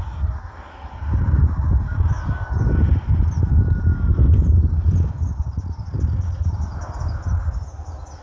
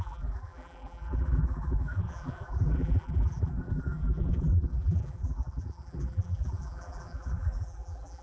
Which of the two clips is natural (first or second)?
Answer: first